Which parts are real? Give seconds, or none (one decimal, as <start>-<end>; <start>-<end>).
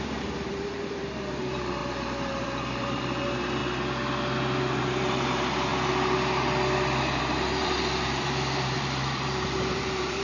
3.6-4.8; 5.7-7.2